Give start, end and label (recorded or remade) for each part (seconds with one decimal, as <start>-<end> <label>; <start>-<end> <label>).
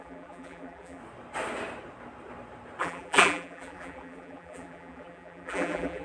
0.0-1.0 remade; 1.0-2.8 recorded; 2.8-6.0 remade